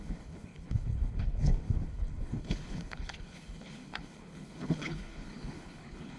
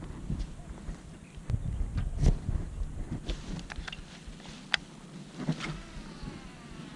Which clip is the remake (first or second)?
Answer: first